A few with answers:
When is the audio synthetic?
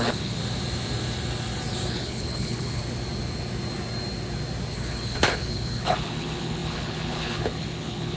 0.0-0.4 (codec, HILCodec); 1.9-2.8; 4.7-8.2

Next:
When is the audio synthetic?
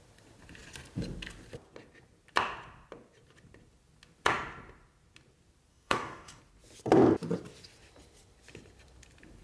5.7-6.4 (codec, DAC)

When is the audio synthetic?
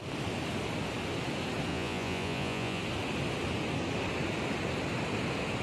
1.7-2.8 (vocoder, Vocos)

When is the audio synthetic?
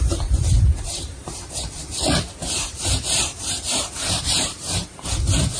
0.0-1.9 (vocoder, BigVGAN v2); 2.5-5.6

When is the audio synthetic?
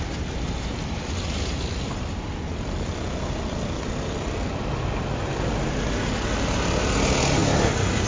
none